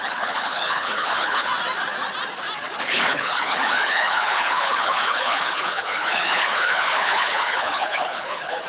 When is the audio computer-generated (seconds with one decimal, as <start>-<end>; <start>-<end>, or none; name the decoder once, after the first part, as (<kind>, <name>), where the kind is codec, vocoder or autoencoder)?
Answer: 0.0-1.5 (codec, HILCodec); 2.8-8.7